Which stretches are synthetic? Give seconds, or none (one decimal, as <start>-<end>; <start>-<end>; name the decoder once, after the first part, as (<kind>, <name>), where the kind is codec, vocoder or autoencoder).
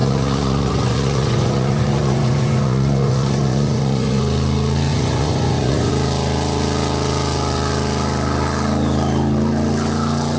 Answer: 0.0-4.2 (vocoder, Vocos); 4.9-5.9